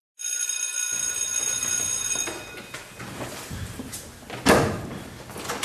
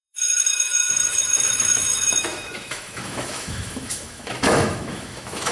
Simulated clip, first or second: second